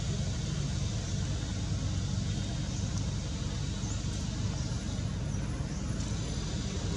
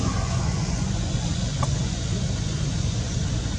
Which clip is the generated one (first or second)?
second